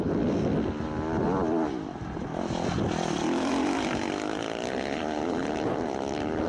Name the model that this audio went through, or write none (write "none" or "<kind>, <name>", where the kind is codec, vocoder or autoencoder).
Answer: none